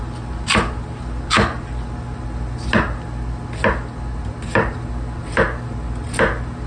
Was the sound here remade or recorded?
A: recorded